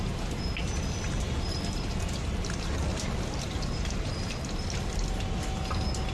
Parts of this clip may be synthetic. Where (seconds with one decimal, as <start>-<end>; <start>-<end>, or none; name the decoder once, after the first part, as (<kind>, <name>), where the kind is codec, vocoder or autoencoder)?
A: 0.6-4.1 (vocoder, BigVGAN v2)